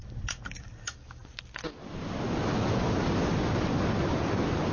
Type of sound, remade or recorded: recorded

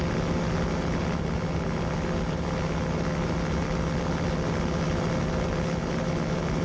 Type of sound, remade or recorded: recorded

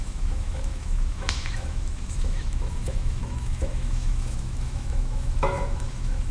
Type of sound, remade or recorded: remade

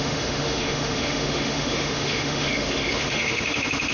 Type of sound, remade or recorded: remade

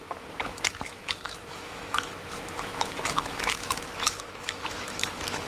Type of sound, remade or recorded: remade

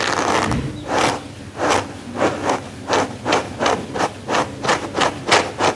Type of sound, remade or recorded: recorded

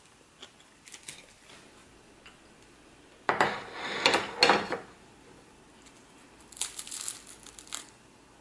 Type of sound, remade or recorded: recorded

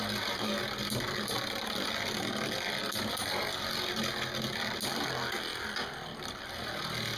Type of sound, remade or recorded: recorded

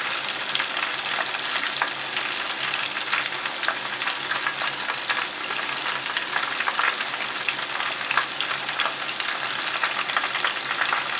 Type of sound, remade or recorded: recorded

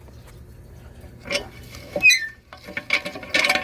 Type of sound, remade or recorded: recorded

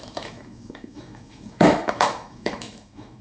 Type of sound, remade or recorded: remade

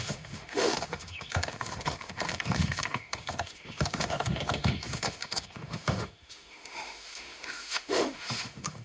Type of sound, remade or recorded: remade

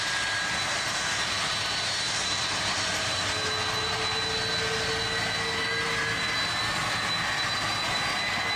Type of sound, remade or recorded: recorded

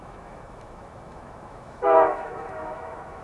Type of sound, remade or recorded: remade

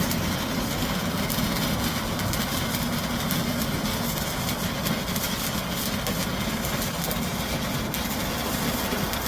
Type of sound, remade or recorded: recorded